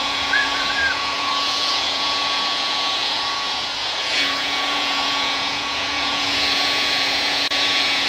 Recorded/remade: remade